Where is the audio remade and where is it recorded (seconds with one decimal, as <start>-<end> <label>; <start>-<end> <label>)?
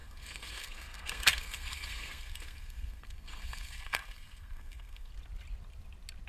0.0-5.1 remade; 5.1-6.3 recorded